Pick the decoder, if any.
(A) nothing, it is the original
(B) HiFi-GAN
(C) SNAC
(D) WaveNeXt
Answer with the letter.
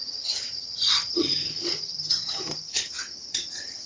B